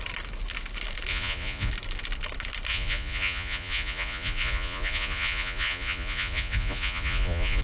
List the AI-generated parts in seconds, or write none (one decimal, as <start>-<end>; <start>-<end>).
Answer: 1.1-1.7; 2.7-7.6